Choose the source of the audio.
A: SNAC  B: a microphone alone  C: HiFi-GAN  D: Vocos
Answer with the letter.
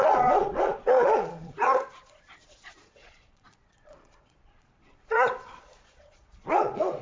D